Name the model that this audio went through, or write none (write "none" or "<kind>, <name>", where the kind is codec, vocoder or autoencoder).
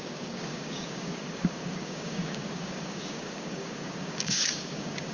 codec, DAC